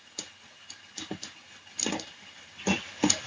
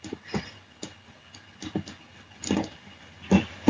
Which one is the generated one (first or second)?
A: first